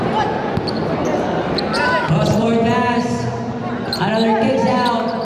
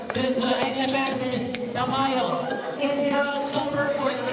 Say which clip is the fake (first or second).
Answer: second